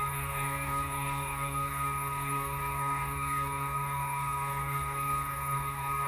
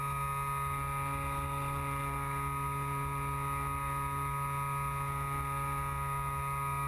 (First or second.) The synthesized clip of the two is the first